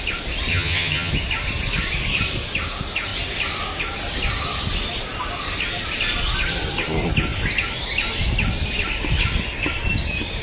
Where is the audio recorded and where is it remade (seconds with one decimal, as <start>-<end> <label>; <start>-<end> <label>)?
0.0-0.5 recorded; 0.5-1.1 remade; 1.1-10.4 recorded